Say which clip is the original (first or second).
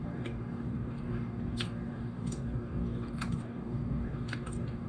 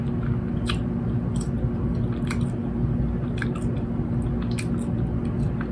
second